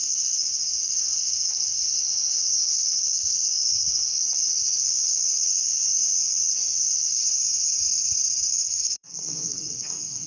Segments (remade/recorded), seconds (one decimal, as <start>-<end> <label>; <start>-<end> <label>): 0.0-7.2 remade; 7.2-8.5 recorded; 8.5-10.3 remade